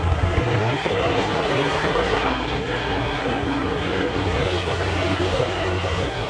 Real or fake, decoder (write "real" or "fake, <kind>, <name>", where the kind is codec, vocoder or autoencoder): fake, codec, SNAC